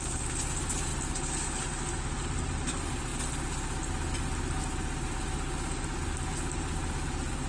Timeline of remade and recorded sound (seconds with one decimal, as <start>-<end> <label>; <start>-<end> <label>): 0.0-7.5 recorded

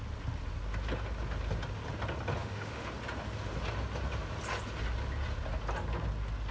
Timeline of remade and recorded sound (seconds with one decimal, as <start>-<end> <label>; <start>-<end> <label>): 0.0-2.4 recorded; 2.4-2.9 remade; 2.9-6.5 recorded

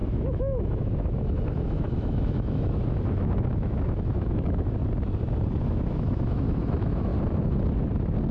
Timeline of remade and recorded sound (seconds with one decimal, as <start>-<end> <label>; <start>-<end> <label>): 0.0-4.8 remade; 4.8-5.6 recorded; 5.6-7.1 remade; 7.1-8.3 recorded

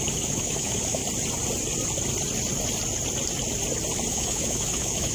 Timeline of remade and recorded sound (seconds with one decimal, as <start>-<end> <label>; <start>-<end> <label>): 0.0-1.0 remade; 1.0-4.1 recorded; 4.1-5.1 remade

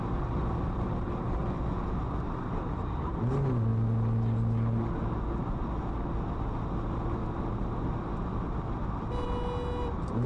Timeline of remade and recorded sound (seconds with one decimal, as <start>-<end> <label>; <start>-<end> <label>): 0.0-10.3 recorded

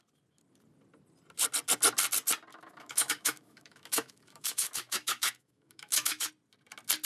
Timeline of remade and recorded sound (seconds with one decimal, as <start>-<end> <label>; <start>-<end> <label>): 0.0-2.5 recorded; 2.5-6.3 remade; 6.3-7.1 recorded

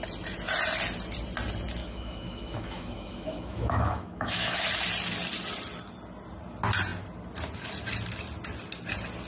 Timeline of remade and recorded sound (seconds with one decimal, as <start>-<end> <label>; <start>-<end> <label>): 0.0-1.8 recorded; 1.8-4.6 remade; 4.6-9.3 recorded